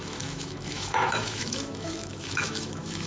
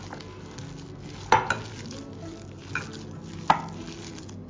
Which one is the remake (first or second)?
first